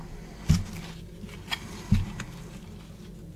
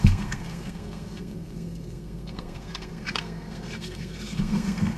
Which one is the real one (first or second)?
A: first